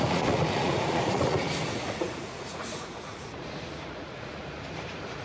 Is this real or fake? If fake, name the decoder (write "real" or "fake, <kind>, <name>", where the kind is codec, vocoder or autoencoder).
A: fake, vocoder, Vocos